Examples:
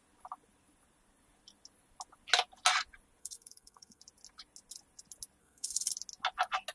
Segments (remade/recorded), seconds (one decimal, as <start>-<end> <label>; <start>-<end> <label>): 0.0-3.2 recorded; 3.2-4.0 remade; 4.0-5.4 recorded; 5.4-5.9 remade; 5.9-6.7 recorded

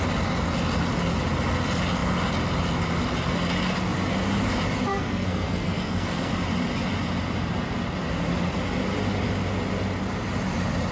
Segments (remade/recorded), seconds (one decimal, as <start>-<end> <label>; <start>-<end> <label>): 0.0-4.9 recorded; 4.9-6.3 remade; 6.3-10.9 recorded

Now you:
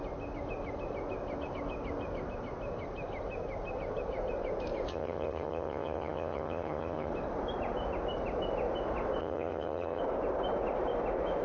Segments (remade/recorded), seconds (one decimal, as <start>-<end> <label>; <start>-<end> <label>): 0.0-4.9 recorded; 4.9-7.1 remade; 7.1-9.2 recorded; 9.2-10.0 remade; 10.0-11.4 recorded